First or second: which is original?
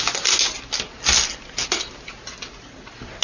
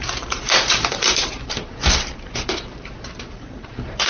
first